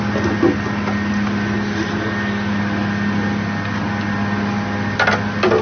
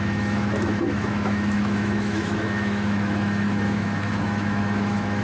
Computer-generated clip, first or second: second